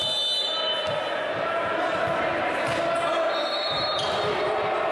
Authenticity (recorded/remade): recorded